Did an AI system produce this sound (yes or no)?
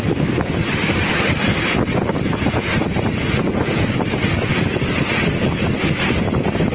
no